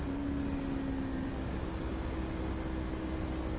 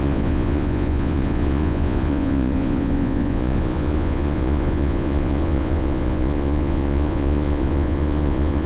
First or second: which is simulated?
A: second